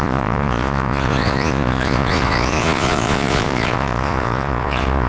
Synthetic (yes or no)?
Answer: yes